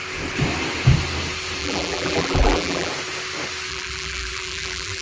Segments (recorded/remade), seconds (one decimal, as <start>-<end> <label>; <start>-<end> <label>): 0.0-1.6 recorded; 1.6-2.9 remade; 2.9-3.7 recorded; 3.7-5.0 remade